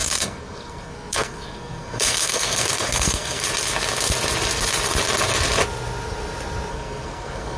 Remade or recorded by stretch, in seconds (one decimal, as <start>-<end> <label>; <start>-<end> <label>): 0.0-3.4 remade; 3.4-6.7 recorded; 6.7-7.6 remade